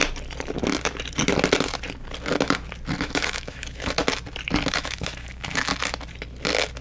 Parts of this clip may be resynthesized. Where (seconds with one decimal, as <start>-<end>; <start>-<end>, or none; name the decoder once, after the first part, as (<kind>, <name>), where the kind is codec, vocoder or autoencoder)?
3.0-4.0 (autoencoder, DAC-VAE); 4.7-5.7